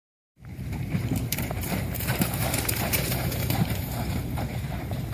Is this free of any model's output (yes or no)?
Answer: no